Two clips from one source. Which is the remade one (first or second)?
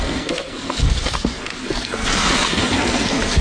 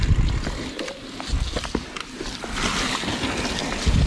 first